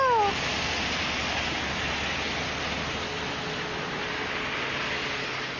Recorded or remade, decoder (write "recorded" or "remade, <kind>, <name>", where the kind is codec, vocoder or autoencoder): recorded